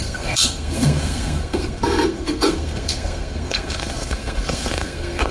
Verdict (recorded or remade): remade